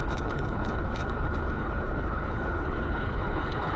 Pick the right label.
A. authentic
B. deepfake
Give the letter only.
B